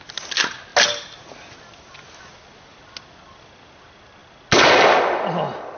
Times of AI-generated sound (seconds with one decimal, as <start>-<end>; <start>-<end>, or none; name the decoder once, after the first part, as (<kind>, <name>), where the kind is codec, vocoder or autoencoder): none